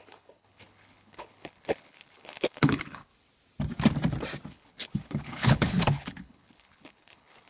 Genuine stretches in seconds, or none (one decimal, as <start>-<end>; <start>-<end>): 3.1-4.5